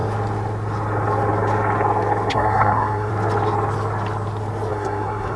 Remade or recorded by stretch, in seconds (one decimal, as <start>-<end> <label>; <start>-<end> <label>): 0.0-2.3 recorded; 2.3-3.1 remade; 3.1-4.7 recorded; 4.7-5.4 remade